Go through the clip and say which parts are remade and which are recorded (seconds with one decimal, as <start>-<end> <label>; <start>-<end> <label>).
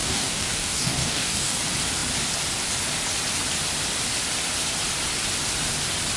0.0-1.6 remade; 1.6-6.2 recorded